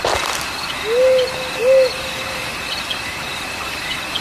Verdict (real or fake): real